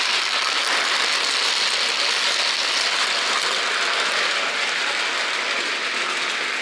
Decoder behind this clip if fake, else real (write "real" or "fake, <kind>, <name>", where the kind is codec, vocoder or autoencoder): real